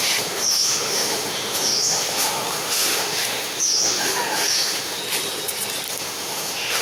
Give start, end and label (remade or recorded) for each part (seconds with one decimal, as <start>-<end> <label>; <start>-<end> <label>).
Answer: 0.0-5.0 remade; 5.0-5.9 recorded; 5.9-6.8 remade